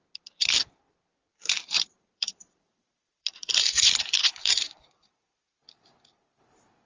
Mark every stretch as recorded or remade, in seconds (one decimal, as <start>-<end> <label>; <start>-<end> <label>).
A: 0.0-1.3 recorded; 1.3-5.4 remade; 5.4-6.9 recorded